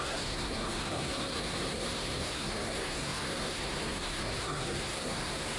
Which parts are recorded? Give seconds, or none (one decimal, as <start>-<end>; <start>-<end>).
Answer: none